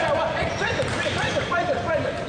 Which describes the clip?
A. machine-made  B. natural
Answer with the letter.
A